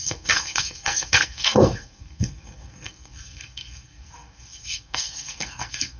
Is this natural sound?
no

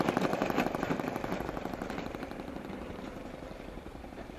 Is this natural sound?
no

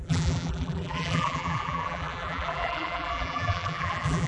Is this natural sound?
no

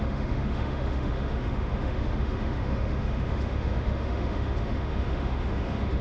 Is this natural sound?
no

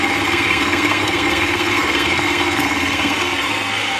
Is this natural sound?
no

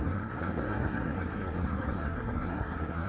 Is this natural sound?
no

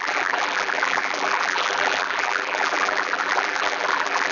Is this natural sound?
no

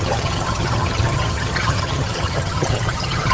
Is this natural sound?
no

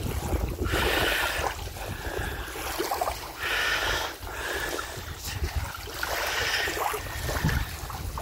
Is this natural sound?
yes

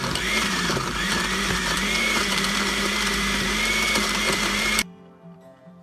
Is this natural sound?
no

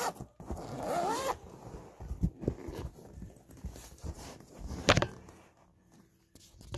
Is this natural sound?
yes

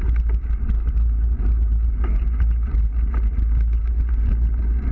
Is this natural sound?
yes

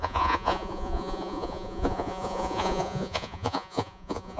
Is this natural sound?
no